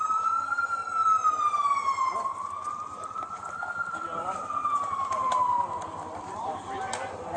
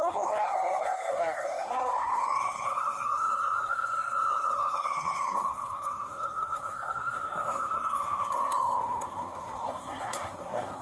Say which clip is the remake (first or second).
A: second